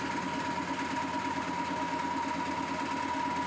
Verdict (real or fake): real